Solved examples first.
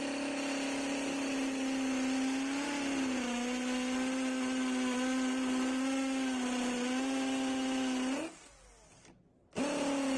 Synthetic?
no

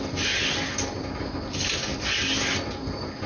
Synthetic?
no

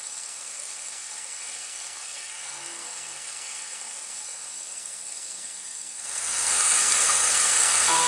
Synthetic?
yes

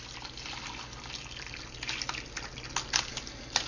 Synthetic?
no